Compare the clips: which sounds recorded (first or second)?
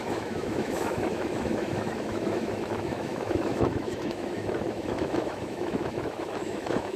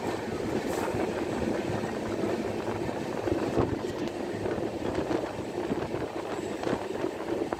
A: second